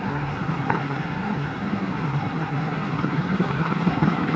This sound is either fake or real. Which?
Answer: fake